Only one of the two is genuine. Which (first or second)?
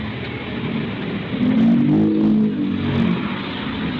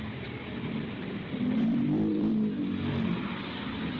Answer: first